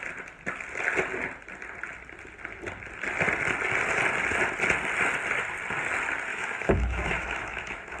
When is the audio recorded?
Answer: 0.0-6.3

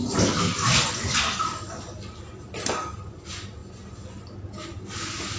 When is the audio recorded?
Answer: 0.0-5.4

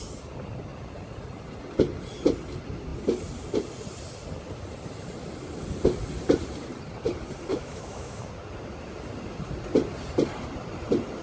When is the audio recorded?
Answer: 0.0-7.5; 8.2-11.2

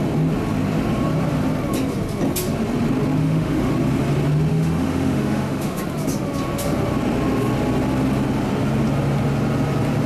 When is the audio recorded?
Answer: 0.0-3.2; 3.7-4.5; 5.8-10.1